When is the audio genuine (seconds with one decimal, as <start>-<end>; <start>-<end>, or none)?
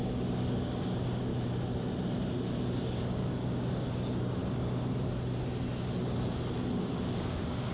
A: 1.3-2.8; 4.4-6.8